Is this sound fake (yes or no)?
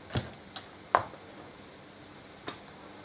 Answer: no